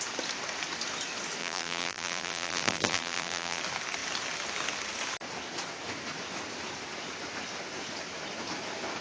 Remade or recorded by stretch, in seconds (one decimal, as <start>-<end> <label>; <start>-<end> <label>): 0.0-1.4 recorded; 1.4-3.6 remade; 3.6-9.0 recorded